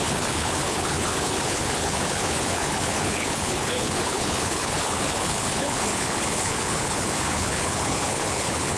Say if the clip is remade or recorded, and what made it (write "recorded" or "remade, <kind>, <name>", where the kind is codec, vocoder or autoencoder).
remade, codec, HILCodec